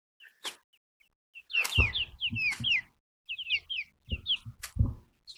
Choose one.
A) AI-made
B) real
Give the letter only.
B